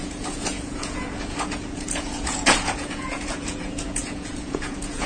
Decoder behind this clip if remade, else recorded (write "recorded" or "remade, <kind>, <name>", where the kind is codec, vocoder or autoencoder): remade, vocoder, Vocos